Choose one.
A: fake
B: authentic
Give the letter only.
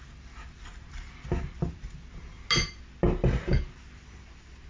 B